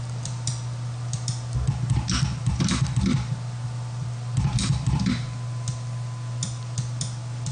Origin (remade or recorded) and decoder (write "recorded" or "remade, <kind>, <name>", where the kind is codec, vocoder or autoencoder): recorded